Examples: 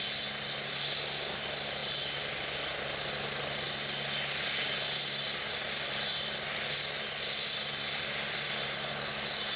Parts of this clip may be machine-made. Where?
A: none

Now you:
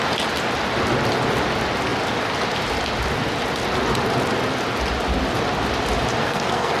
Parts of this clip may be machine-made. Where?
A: 6.2-6.8 (codec, SNAC)

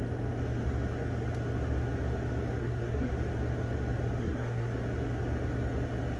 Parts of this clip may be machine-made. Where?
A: 2.6-3.1 (codec, SNAC); 4.2-4.7

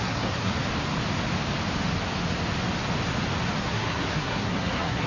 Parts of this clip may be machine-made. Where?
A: 0.0-0.5 (codec, SNAC); 3.6-5.1